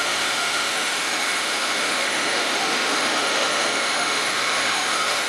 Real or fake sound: fake